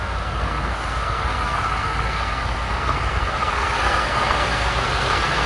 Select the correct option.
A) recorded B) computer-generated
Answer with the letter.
B